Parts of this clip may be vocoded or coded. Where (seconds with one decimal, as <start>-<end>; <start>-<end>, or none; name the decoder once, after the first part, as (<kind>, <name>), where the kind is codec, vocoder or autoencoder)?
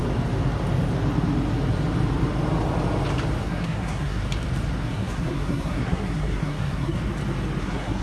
3.4-4.2 (codec, SNAC); 4.8-7.0; 7.6-8.0